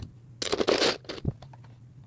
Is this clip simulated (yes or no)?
no